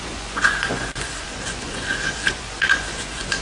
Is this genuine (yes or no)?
no